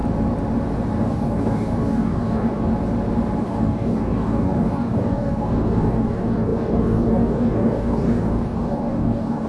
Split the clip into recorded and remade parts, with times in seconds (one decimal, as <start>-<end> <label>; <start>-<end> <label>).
0.0-1.0 recorded; 1.0-2.7 remade; 2.7-3.4 recorded; 3.4-9.5 remade